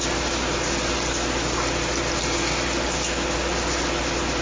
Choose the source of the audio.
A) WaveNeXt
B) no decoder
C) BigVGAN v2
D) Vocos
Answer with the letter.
B